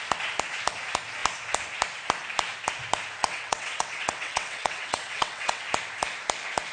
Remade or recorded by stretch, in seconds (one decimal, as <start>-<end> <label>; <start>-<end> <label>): 0.0-3.2 recorded; 3.2-5.6 remade; 5.6-6.7 recorded